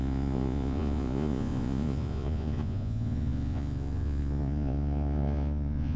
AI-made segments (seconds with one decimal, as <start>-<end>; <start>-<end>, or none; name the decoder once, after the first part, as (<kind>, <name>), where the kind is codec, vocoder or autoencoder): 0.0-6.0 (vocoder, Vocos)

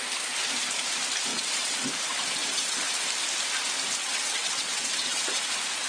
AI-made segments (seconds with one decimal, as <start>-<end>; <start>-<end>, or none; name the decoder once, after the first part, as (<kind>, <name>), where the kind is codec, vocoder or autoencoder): 1.3-1.9 (vocoder, WaveNeXt); 2.4-2.9; 4.0-5.4

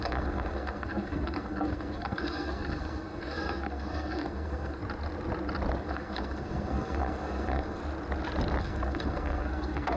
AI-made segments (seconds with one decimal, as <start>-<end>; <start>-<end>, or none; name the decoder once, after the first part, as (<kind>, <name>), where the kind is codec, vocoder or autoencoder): 0.0-4.8 (codec, SNAC); 5.8-7.8; 8.6-10.0

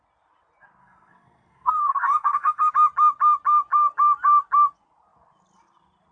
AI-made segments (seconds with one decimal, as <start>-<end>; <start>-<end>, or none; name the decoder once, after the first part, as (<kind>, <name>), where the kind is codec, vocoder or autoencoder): 0.8-2.7 (codec, SNAC)